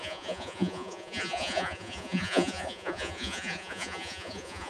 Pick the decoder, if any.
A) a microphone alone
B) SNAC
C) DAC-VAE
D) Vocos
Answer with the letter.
D